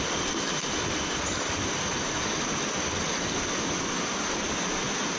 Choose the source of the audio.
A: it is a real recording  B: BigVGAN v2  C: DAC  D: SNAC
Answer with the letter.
A